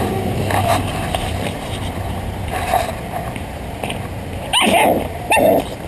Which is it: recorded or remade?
remade